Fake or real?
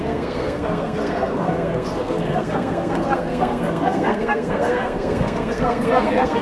fake